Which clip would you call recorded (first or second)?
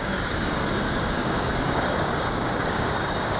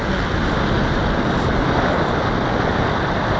second